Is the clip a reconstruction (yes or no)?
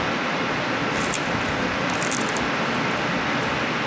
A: no